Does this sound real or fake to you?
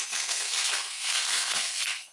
fake